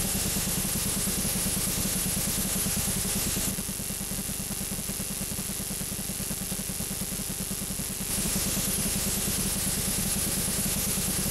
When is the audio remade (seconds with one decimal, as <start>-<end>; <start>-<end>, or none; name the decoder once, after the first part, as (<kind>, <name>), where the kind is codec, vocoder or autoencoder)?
0.0-3.5 (autoencoder, DAC-VAE); 8.1-11.3